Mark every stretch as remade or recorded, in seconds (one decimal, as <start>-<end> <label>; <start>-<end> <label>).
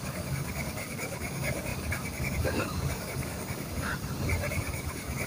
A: 0.0-3.9 remade; 3.9-4.5 recorded; 4.5-5.3 remade